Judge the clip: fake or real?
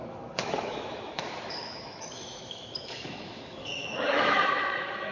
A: fake